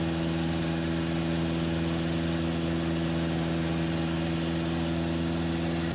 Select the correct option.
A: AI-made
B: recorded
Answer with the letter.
B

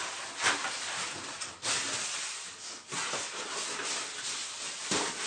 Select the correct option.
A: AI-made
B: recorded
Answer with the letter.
B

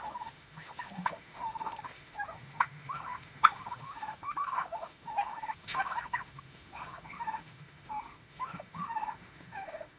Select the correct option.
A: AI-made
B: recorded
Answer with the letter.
A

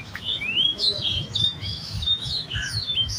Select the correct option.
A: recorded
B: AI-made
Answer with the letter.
B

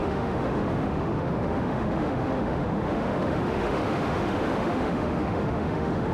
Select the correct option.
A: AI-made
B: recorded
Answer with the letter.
A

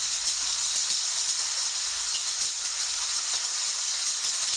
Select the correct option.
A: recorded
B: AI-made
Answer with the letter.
A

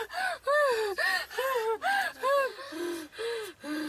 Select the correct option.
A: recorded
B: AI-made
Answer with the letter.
A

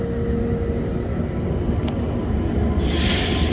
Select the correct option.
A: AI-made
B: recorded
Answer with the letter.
B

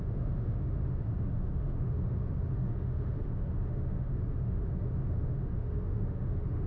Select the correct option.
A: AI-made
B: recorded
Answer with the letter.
A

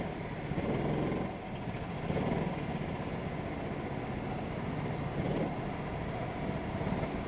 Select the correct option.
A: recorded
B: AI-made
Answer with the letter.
A